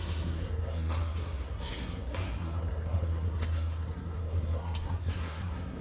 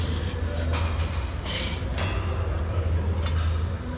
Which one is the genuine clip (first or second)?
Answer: second